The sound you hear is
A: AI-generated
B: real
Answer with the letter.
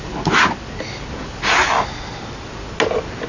B